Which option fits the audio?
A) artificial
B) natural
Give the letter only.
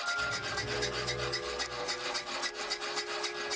B